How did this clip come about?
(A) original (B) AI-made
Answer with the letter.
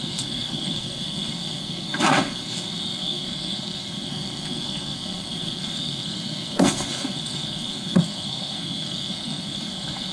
B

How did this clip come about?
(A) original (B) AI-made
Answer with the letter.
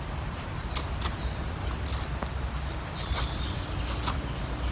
A